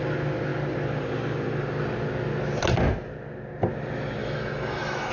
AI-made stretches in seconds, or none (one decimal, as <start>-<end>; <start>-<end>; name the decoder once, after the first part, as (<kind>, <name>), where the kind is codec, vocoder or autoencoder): 4.2-5.1 (autoencoder, DAC-VAE)